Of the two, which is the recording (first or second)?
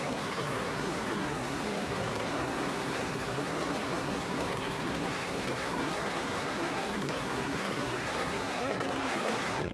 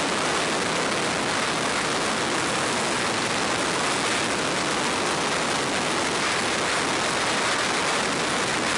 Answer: second